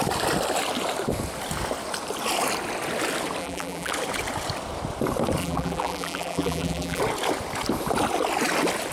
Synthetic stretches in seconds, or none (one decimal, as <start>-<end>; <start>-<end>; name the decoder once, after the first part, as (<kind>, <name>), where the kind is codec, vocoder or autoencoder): 3.4-3.9 (vocoder, BigVGAN v2); 5.4-7.0